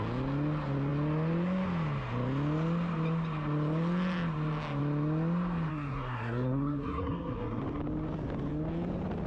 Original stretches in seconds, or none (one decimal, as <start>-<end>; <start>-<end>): 0.0-5.7; 7.6-9.3